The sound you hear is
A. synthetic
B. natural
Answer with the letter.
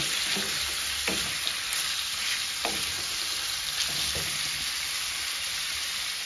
B